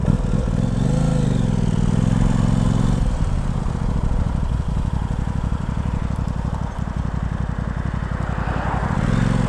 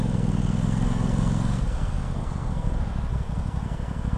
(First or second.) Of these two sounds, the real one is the first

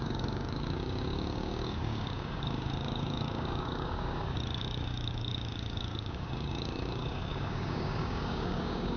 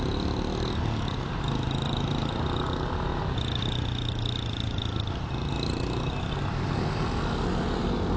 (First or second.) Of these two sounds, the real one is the second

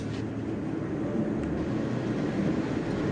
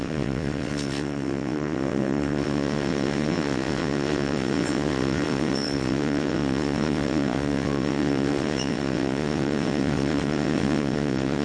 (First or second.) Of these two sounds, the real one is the first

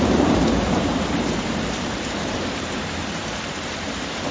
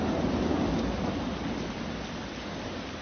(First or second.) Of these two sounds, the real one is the second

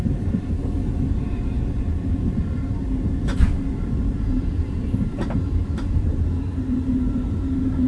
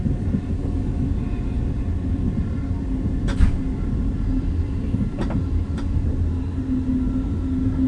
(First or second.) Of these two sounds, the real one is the second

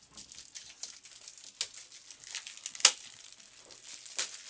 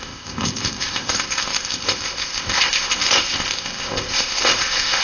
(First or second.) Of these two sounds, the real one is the first